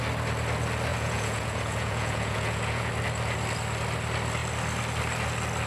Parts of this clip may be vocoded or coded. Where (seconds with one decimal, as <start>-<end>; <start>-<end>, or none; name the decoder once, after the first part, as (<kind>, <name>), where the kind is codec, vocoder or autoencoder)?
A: 0.9-2.9 (vocoder, Vocos)